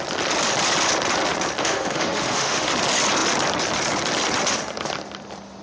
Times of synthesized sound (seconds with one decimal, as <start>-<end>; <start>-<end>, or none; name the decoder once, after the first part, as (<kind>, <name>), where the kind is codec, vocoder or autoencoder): 1.6-2.7 (autoencoder, DAC-VAE)